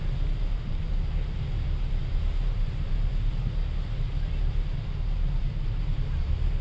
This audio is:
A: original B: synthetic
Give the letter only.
A